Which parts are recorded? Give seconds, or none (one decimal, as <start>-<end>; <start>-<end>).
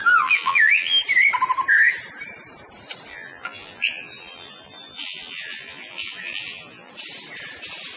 1.0-3.1; 6.9-8.0